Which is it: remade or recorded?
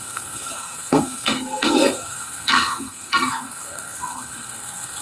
remade